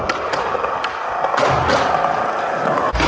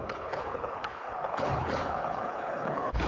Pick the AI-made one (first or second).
second